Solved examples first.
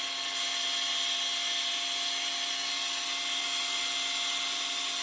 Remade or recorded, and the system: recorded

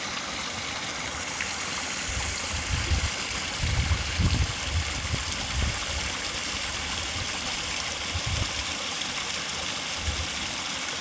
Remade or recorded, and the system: recorded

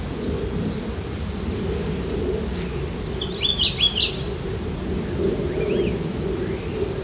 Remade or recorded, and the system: recorded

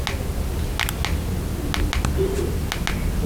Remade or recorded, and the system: recorded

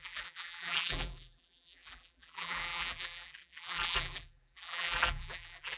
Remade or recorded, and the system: remade, vocoder, BigVGAN v2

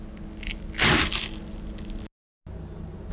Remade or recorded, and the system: recorded